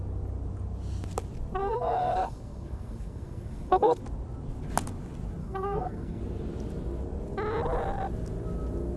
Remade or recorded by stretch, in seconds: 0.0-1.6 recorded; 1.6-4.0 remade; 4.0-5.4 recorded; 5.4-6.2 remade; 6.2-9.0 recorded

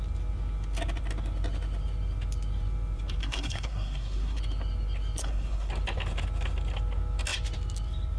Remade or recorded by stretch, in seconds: 0.0-3.2 recorded; 3.2-4.4 remade; 4.4-5.2 recorded; 5.2-5.7 remade; 5.7-8.2 recorded

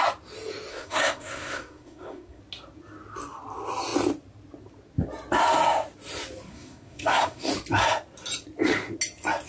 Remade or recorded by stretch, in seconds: 0.0-0.7 recorded; 0.7-2.4 remade; 2.4-6.5 recorded; 6.5-7.5 remade; 7.5-9.5 recorded

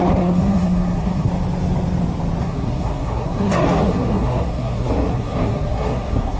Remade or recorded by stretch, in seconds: 0.0-1.3 remade; 1.3-2.4 recorded; 2.4-6.4 remade

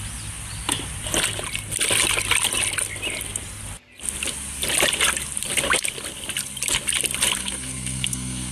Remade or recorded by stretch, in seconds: 0.0-7.4 recorded; 7.4-8.5 remade

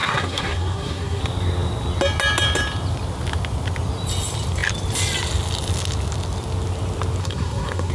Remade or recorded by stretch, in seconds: 0.0-1.2 remade; 1.2-7.2 recorded; 7.2-7.9 remade